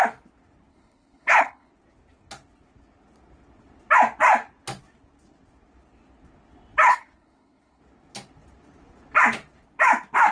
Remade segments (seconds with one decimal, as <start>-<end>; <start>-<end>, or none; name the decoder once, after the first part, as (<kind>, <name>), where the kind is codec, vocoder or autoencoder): 0.7-1.7 (codec, HILCodec); 6.9-7.8